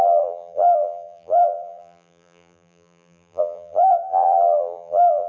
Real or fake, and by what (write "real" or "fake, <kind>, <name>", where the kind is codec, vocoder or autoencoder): fake, vocoder, BigVGAN v2